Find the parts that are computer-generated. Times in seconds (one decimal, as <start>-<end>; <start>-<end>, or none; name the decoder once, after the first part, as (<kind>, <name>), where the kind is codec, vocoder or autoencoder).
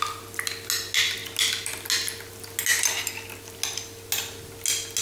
none